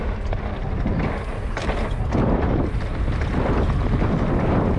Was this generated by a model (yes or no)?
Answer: no